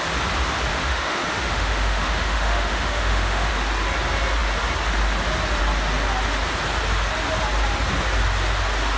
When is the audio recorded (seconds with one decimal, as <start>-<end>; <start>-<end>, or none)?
0.0-0.7; 3.5-9.0

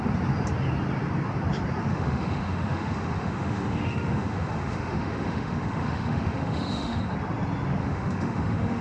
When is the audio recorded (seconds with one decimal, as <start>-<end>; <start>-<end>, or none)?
0.0-1.9; 7.0-7.8

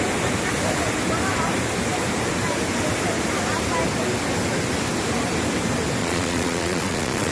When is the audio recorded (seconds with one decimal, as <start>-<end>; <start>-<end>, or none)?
0.0-6.0

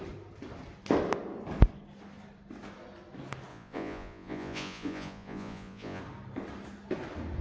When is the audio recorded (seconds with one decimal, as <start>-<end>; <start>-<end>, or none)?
0.0-3.5; 6.0-7.4

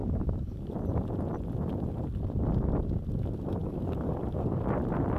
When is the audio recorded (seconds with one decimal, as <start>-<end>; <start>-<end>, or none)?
0.7-3.6; 4.6-5.2

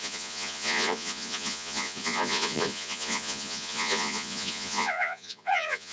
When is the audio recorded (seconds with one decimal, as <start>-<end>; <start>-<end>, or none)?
none

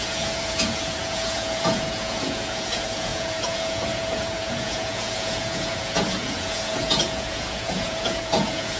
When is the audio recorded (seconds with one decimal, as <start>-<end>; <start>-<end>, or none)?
none

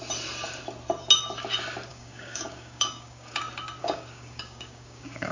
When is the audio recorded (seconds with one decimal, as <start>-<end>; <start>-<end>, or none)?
0.0-1.9; 3.4-3.8